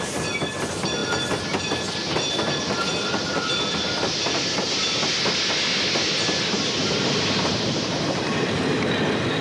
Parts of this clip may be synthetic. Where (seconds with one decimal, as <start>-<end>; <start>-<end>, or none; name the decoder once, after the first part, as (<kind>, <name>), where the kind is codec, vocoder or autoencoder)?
none